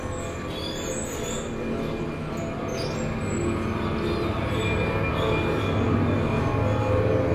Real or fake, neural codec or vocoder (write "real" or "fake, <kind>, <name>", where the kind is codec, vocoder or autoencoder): real